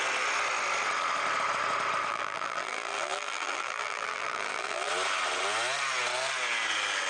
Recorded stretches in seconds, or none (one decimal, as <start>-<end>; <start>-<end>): 0.0-2.1; 4.9-7.1